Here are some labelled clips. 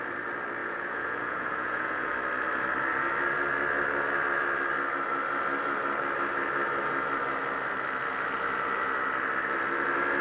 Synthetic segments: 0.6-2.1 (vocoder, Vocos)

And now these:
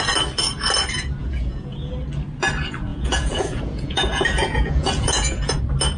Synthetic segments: 1.2-1.9 (vocoder, Vocos); 2.9-5.6

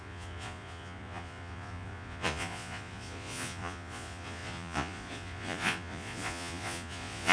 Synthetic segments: 0.0-7.3 (vocoder, Vocos)

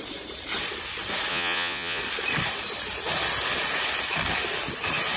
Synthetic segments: 1.3-2.0 (vocoder, Vocos)

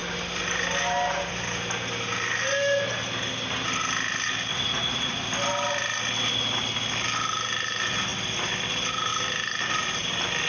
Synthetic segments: 4.5-5.2 (vocoder, Vocos)

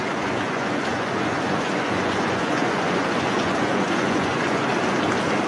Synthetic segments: 0.0-4.7 (vocoder, Vocos)